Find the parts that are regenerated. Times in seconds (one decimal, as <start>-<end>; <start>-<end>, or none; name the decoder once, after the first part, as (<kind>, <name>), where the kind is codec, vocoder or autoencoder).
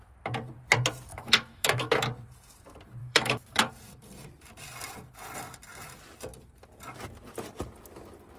1.1-1.9 (autoencoder, DAC-VAE); 3.0-3.7